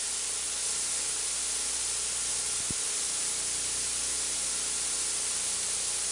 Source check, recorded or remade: recorded